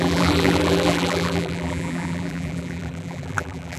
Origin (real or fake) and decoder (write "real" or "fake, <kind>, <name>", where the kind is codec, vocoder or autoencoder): fake, vocoder, BigVGAN v2